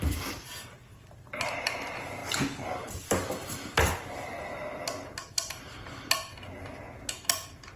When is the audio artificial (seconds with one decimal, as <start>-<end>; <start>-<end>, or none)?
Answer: none